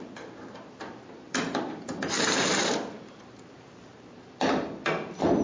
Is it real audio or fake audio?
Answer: fake